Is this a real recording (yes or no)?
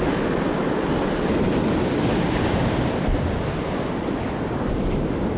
yes